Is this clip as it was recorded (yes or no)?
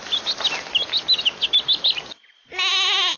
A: yes